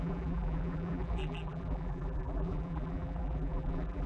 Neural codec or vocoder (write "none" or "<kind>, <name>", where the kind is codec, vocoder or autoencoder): vocoder, BigVGAN v2